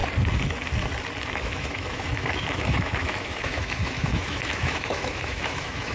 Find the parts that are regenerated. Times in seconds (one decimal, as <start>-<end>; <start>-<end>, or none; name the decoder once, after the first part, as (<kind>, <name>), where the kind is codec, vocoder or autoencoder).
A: 1.3-5.9 (autoencoder, DAC-VAE)